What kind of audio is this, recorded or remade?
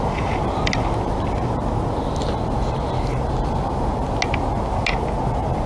recorded